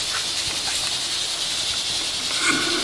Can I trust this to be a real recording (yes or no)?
yes